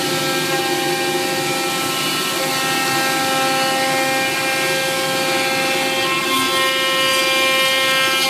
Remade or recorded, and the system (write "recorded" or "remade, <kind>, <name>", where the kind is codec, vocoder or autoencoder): recorded